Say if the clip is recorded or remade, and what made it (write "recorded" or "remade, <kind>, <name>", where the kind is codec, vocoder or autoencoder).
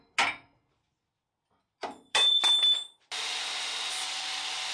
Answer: recorded